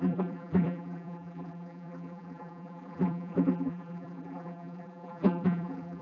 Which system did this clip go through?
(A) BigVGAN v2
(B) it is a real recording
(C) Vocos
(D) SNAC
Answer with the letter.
A